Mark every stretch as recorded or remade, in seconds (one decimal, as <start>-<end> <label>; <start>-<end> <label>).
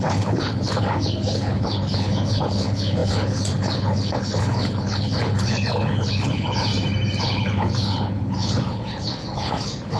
0.0-6.7 remade; 6.7-7.2 recorded; 7.2-10.0 remade